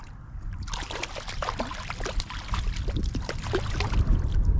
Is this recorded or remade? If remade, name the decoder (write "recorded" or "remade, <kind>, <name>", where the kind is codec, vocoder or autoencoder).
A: remade, vocoder, BigVGAN v2